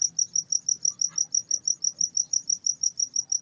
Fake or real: real